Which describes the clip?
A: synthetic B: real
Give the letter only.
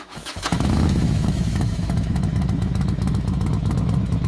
A